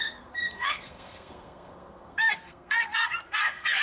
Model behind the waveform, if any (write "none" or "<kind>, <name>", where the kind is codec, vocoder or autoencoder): codec, SNAC